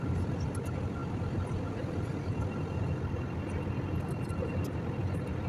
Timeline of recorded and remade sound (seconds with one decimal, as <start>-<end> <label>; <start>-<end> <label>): 0.0-5.5 recorded